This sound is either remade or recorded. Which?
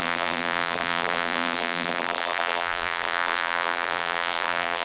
remade